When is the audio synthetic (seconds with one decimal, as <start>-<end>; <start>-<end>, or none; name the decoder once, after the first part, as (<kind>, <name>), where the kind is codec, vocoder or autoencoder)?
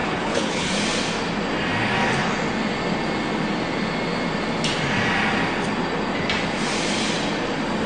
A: 0.0-0.7 (codec, HILCodec)